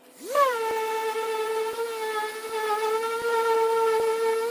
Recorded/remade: recorded